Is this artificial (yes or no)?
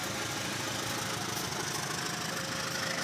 no